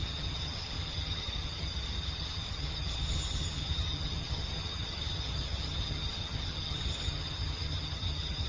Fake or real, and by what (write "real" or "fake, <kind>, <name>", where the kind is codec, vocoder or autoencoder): fake, vocoder, HiFi-GAN